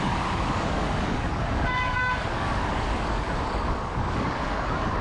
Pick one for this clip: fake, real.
fake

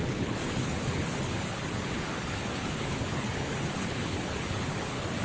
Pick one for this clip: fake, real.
fake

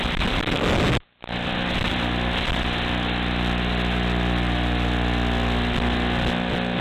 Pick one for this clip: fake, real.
real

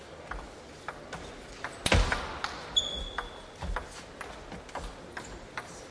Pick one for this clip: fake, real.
real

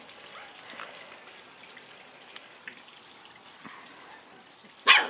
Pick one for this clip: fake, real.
real